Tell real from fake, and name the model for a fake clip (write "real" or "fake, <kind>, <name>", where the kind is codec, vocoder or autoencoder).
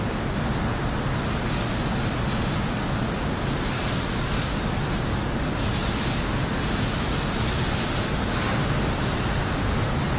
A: real